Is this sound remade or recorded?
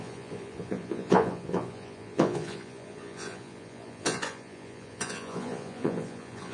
remade